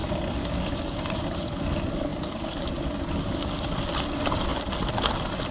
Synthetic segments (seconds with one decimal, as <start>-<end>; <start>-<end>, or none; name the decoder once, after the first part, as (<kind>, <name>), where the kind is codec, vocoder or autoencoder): none